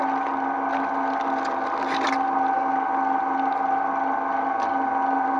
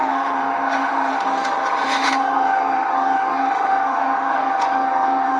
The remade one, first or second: second